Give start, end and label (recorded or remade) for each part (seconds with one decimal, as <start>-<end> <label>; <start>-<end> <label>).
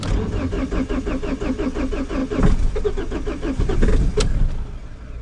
0.0-5.2 recorded